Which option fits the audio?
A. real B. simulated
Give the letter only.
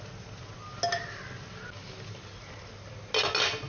A